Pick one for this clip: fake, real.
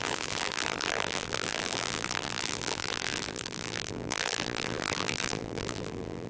fake